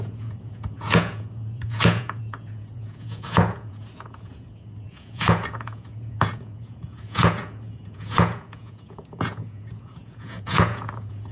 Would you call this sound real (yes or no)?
no